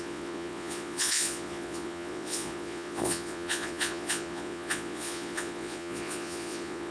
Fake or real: fake